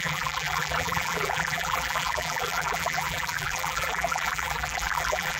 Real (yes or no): no